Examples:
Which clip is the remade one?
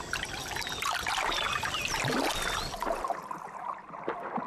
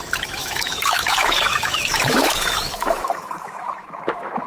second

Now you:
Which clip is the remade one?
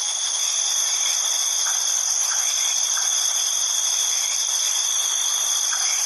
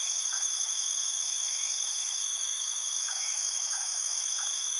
second